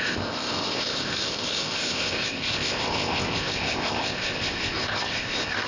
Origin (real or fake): fake